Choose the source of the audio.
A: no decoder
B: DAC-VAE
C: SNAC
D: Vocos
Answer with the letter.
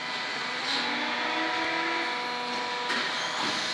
A